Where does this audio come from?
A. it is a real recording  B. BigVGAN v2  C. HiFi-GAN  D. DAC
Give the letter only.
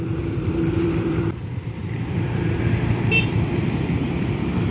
B